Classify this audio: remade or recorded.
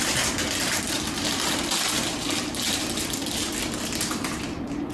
recorded